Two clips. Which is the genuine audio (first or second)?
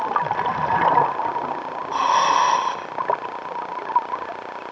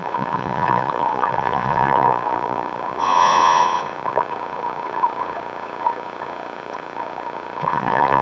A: first